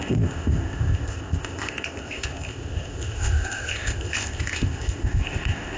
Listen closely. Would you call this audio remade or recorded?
remade